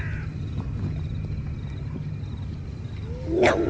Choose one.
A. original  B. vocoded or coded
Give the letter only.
A